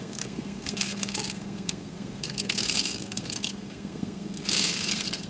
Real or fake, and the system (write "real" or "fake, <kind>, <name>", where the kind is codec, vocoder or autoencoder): fake, codec, SNAC